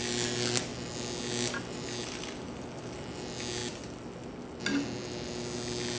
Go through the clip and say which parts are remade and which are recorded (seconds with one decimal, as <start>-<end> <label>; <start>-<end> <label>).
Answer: 0.0-6.0 recorded